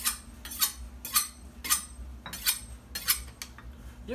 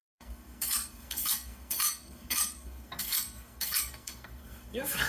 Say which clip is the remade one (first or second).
second